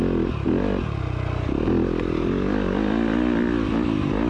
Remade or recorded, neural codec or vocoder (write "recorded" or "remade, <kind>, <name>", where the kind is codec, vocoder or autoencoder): recorded